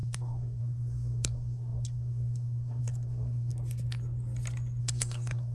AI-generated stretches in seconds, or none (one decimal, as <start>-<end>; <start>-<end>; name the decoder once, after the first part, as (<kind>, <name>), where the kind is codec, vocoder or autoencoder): 0.0-3.5 (codec, SNAC); 4.8-5.5